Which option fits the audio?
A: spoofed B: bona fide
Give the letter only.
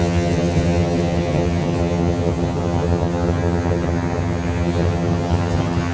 A